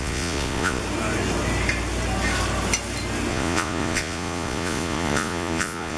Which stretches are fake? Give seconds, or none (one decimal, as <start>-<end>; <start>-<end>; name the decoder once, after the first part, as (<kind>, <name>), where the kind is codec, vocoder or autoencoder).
0.0-0.8 (vocoder, Vocos); 3.3-6.0